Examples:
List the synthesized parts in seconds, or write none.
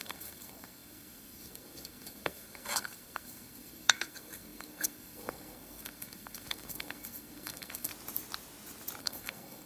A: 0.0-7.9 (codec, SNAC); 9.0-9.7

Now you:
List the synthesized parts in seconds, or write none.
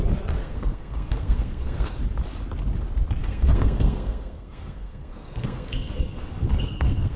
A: 0.4-2.0 (codec, SNAC); 3.2-7.2